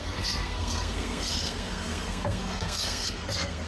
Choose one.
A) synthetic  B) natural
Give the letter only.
A